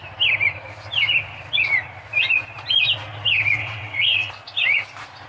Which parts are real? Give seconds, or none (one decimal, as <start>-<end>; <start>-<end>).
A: 0.0-3.6; 4.3-5.3